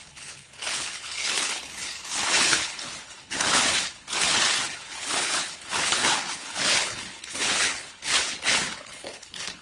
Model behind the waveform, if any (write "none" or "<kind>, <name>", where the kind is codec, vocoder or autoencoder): codec, HILCodec